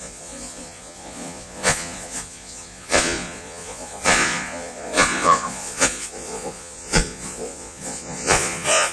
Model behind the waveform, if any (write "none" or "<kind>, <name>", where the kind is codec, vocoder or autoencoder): vocoder, Vocos